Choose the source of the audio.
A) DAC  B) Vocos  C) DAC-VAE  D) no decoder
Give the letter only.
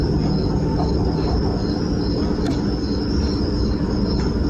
D